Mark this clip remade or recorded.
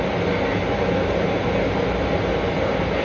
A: recorded